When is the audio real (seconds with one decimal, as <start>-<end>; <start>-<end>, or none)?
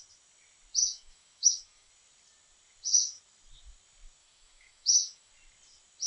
0.0-0.8; 1.9-4.2; 5.3-6.1